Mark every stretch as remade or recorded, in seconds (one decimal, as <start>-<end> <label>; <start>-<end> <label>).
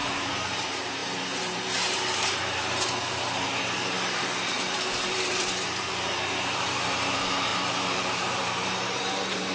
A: 0.0-9.5 remade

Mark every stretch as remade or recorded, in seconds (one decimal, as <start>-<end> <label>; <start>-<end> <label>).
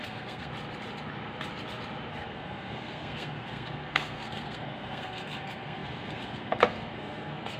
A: 0.0-0.5 remade; 0.5-2.1 recorded; 2.1-7.6 remade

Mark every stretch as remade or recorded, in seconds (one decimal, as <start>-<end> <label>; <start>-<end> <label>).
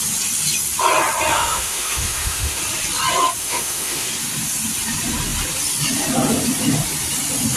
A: 0.0-1.3 recorded; 1.3-2.6 remade; 2.6-3.4 recorded; 3.4-4.1 remade; 4.1-7.6 recorded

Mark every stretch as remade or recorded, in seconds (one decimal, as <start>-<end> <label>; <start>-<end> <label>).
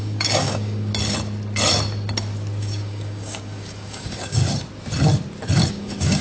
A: 0.0-0.9 remade; 0.9-2.6 recorded; 2.6-4.4 remade; 4.4-5.7 recorded; 5.7-6.2 remade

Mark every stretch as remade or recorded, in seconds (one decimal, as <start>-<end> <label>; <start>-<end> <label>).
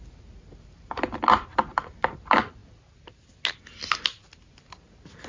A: 0.0-5.3 recorded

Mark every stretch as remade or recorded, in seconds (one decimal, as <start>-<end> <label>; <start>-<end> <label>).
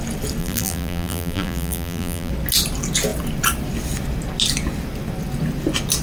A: 0.0-0.4 recorded; 0.4-2.3 remade; 2.3-6.0 recorded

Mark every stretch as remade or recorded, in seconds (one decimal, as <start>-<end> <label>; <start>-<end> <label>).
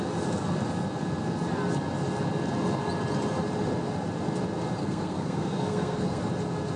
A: 0.0-4.8 recorded; 4.8-6.2 remade; 6.2-6.8 recorded